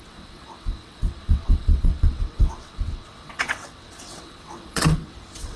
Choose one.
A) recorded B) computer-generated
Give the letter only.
B